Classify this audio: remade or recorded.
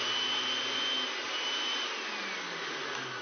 recorded